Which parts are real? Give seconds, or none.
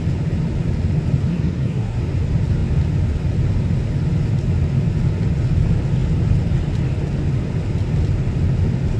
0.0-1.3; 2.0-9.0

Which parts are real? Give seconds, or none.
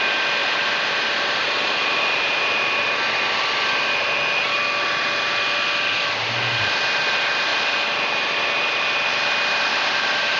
0.0-0.4; 2.4-9.7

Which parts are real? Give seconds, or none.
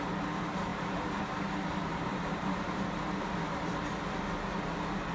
0.0-0.7; 1.2-1.9; 3.7-5.1